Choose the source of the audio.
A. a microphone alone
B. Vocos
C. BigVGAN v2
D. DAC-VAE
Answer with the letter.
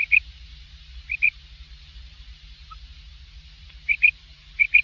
C